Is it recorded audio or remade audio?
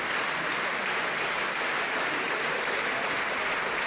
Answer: recorded